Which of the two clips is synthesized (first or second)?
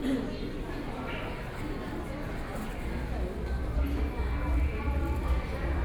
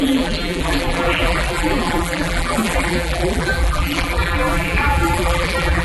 second